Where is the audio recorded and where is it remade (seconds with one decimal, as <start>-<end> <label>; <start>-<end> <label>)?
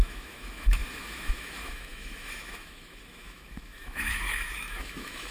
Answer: 0.0-5.3 remade